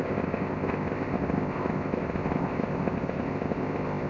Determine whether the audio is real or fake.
fake